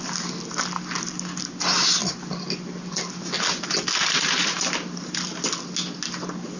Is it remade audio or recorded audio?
recorded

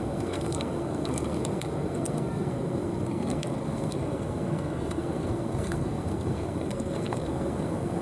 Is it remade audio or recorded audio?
remade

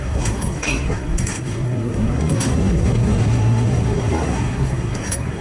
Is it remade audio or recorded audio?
remade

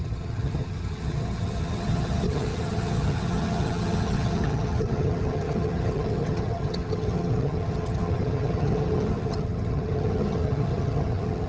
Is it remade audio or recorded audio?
remade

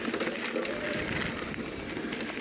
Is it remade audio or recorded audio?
recorded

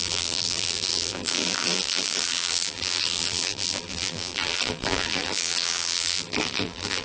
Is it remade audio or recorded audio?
remade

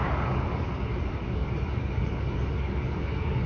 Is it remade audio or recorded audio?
remade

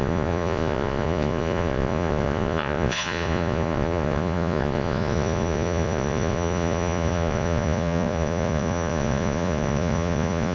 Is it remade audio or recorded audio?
remade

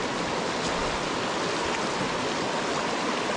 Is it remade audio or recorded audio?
recorded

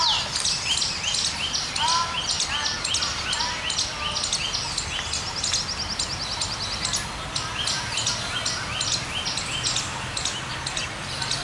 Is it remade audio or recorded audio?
recorded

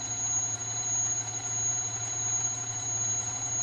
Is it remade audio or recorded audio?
recorded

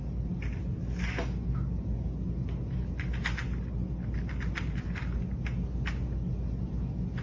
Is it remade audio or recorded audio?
recorded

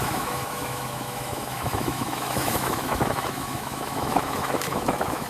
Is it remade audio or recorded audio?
remade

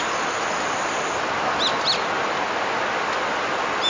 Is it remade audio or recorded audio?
recorded